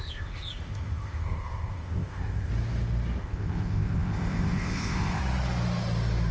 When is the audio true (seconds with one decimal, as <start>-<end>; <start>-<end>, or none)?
2.5-3.2; 5.2-6.3